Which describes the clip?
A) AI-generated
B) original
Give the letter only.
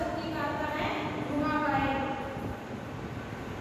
B